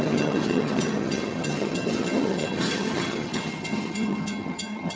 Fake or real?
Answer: fake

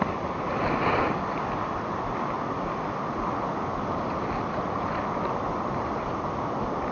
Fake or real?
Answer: real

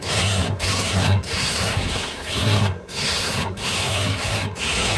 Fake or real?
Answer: fake